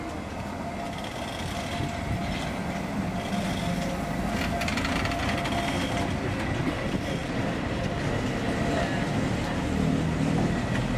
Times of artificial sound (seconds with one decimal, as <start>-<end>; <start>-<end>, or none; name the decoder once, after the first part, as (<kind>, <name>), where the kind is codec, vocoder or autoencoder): 7.2-7.8 (vocoder, BigVGAN v2)